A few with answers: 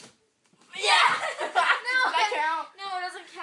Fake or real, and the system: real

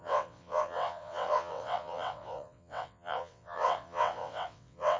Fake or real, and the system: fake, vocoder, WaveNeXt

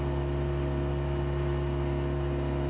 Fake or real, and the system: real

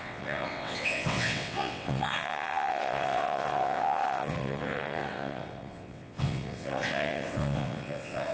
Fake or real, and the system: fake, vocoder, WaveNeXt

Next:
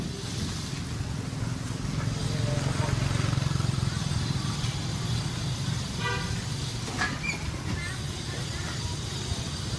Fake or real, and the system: real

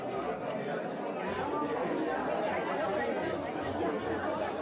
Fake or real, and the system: real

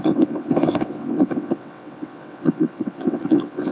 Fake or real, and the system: fake, vocoder, WaveNeXt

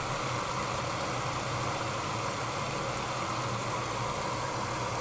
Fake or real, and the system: real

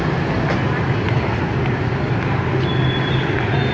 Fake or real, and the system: real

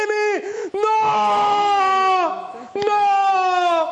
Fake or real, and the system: fake, autoencoder, DAC-VAE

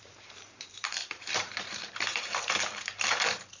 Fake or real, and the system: fake, vocoder, BigVGAN v2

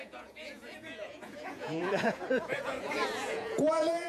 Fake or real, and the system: fake, vocoder, Vocos